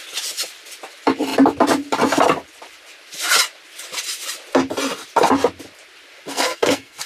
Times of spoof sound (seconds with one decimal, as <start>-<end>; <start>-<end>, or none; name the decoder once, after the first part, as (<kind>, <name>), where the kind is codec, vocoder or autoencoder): 6.3-7.1 (codec, SNAC)